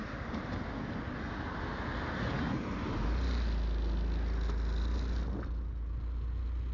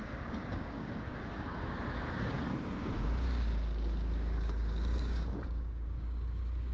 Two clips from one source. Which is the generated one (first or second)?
second